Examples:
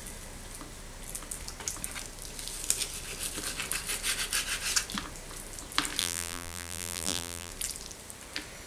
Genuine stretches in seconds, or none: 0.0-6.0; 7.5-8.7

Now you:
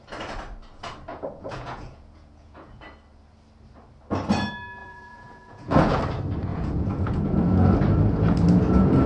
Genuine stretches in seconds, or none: 0.0-1.1; 2.8-4.8; 6.0-6.5; 7.2-9.1